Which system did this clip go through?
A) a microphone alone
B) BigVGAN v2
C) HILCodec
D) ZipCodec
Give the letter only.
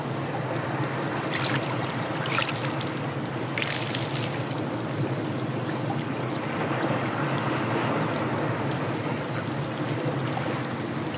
A